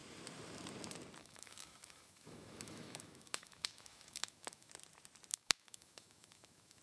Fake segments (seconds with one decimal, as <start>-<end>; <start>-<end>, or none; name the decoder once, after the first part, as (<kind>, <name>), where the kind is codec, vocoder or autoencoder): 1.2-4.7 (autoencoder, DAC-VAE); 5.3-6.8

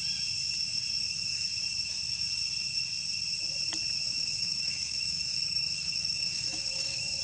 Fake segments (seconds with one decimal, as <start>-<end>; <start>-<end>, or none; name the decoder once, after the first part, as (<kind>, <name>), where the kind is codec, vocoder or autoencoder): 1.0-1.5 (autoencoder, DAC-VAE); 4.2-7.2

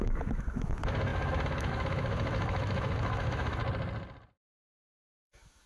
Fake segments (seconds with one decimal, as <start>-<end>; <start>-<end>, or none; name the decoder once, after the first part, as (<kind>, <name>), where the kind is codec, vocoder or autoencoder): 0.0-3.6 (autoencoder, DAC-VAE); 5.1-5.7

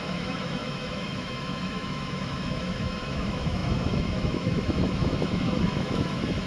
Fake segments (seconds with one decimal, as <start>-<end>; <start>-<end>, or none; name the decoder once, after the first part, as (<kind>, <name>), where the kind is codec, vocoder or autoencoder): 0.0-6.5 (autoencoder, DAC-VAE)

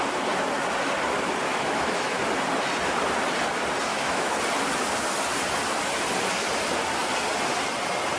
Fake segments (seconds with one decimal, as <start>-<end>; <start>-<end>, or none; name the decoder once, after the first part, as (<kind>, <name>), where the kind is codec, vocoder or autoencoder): 1.5-2.2 (autoencoder, DAC-VAE); 3.9-4.4

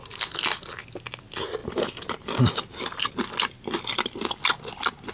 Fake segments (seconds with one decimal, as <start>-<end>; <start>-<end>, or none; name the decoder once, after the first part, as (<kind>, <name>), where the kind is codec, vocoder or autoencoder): none

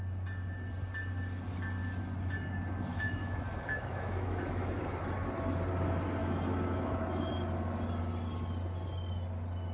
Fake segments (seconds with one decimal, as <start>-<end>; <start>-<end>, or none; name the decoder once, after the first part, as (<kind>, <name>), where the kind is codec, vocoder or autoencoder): 2.9-4.9 (autoencoder, DAC-VAE); 6.2-7.3